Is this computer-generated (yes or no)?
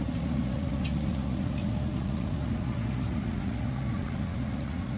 yes